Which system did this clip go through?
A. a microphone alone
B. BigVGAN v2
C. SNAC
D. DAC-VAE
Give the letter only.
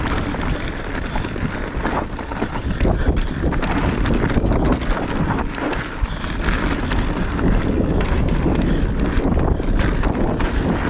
A